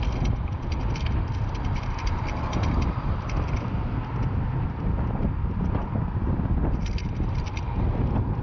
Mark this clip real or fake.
real